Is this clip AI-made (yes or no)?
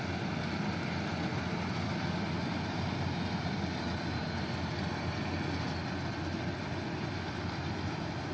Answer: no